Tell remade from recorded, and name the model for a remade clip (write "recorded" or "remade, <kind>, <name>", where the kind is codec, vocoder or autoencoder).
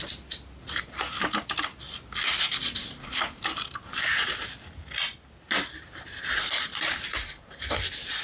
recorded